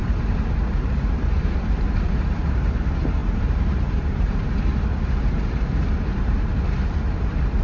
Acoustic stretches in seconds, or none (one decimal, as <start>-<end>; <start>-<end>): none